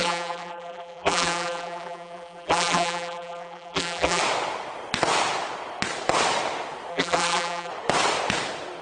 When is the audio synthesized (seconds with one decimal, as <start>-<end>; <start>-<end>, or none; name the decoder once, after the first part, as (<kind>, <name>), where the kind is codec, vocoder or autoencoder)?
0.0-4.2 (vocoder, BigVGAN v2); 6.9-7.7